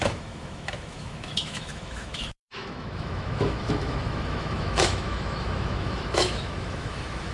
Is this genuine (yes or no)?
no